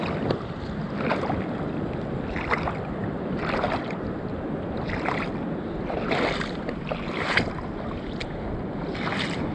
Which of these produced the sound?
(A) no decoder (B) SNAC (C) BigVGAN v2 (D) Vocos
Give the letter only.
A